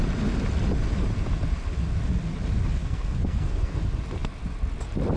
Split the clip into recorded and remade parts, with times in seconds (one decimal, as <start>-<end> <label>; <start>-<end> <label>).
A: 0.0-2.8 recorded; 2.8-3.8 remade; 3.8-5.2 recorded